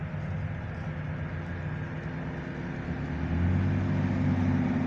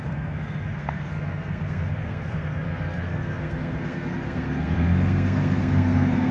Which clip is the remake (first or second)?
second